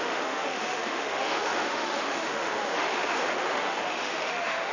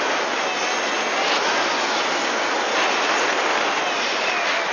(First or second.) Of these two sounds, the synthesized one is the first